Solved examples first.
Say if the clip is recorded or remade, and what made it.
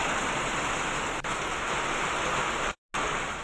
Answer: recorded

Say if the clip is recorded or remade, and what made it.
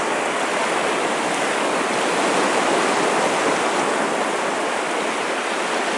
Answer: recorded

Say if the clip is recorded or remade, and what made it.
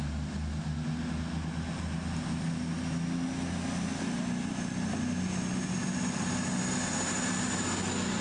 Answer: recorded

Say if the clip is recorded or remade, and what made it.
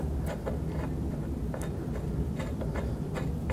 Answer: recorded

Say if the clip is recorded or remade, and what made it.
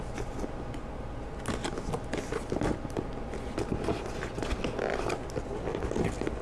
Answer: recorded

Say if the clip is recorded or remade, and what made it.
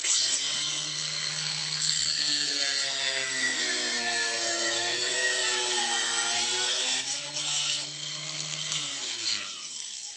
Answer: remade, codec, SNAC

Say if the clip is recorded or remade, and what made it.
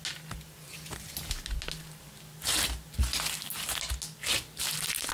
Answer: recorded